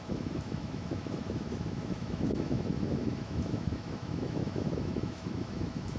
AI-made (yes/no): yes